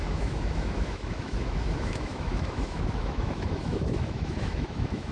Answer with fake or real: fake